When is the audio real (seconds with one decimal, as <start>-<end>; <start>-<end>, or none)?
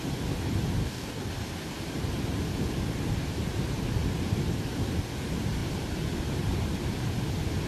0.0-0.8; 1.3-7.7